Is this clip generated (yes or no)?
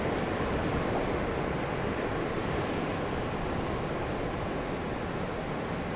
no